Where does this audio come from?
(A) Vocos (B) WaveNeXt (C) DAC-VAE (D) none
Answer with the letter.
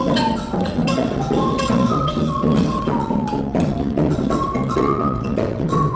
B